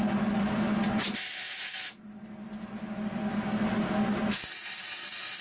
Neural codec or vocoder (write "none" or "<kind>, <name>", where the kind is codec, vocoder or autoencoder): none